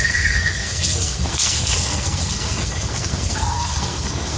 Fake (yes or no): yes